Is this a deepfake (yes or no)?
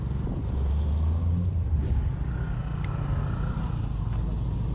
no